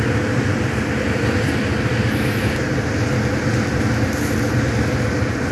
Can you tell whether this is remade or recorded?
recorded